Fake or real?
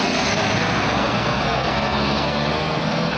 fake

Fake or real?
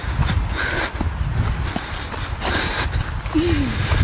real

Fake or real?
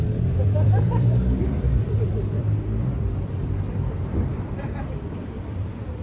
fake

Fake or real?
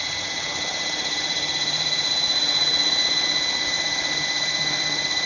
fake